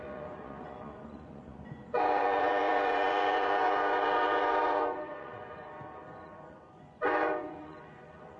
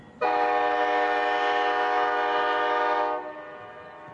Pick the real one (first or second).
second